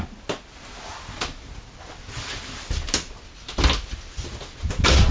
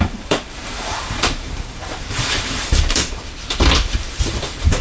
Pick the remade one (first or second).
second